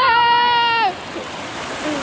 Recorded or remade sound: recorded